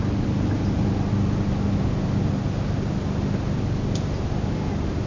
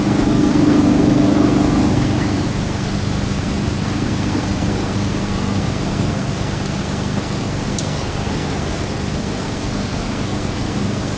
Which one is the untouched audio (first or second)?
first